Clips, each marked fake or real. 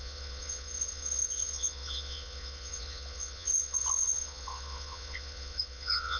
fake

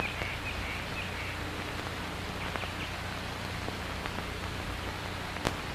real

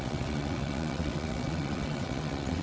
fake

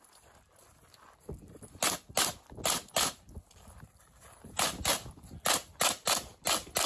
real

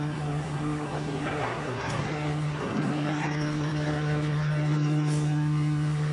fake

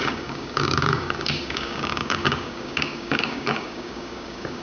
fake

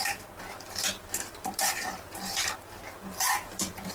fake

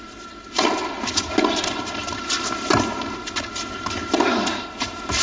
real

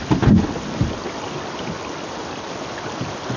real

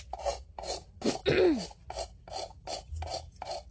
real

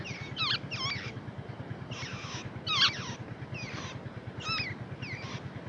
real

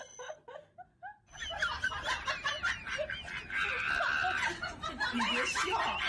real